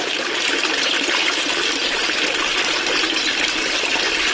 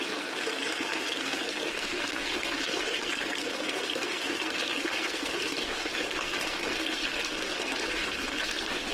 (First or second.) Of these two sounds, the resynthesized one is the second